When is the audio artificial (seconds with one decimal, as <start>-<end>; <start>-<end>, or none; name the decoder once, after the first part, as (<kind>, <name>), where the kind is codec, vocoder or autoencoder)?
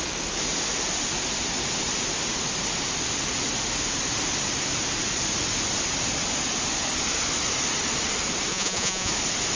8.5-9.1 (vocoder, Vocos)